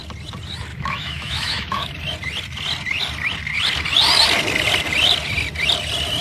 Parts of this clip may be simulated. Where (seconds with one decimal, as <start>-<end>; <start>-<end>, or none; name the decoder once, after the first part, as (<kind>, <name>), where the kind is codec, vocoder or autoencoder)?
0.7-1.9 (autoencoder, DAC-VAE)